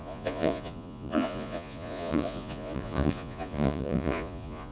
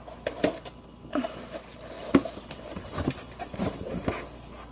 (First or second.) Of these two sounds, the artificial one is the first